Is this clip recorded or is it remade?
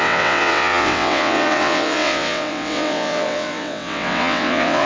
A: remade